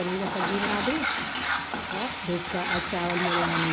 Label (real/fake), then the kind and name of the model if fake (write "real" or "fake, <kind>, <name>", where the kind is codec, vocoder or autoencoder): real